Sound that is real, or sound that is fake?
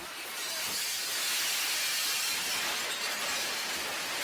real